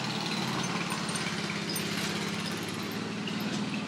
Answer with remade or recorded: recorded